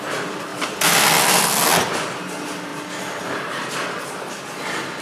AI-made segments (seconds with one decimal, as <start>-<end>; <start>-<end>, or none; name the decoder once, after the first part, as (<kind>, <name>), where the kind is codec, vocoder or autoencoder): none